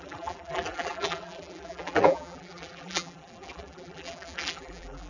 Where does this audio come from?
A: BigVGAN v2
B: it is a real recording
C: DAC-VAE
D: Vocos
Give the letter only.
A